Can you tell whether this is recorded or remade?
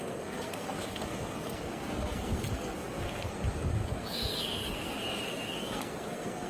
remade